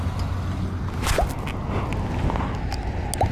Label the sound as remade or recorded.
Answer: recorded